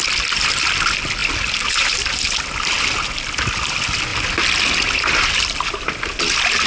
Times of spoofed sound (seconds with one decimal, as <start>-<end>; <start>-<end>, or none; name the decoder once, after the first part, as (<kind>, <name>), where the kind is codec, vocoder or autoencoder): none